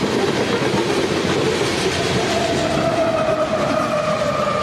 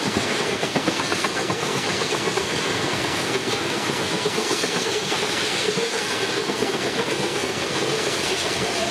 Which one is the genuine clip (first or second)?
first